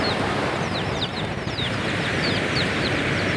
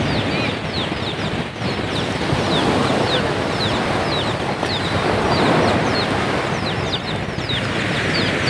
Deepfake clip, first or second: first